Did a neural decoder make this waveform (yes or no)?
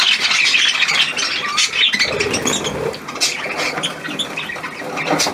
no